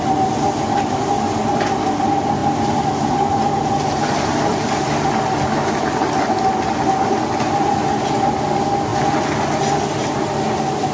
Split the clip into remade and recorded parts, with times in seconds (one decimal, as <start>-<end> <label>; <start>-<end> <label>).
0.0-10.9 recorded